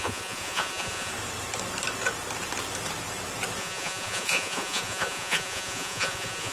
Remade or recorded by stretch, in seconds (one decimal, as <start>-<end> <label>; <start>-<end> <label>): 0.0-1.1 remade; 1.1-3.6 recorded; 3.6-6.5 remade